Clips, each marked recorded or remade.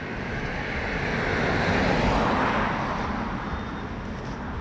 recorded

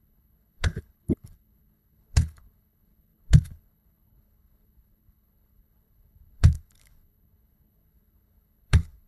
remade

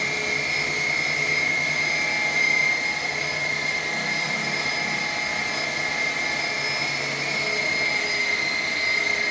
recorded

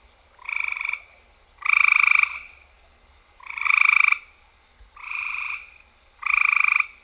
recorded